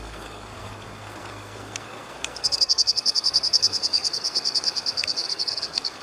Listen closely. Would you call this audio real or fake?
fake